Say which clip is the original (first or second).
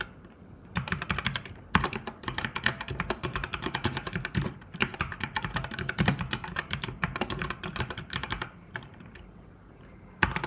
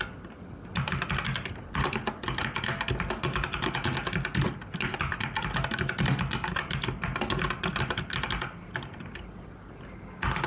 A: second